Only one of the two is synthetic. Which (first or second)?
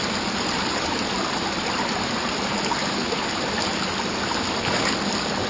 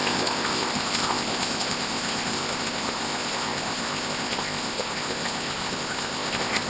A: second